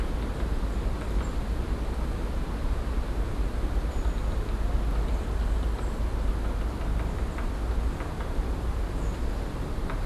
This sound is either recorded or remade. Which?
recorded